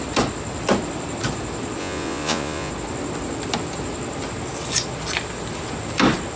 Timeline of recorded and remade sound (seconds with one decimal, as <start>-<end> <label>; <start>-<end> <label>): 0.0-1.8 recorded; 1.8-2.7 remade; 2.7-6.4 recorded